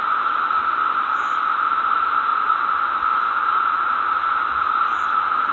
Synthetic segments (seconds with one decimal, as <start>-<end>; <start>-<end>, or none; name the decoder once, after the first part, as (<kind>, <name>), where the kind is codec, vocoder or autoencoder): none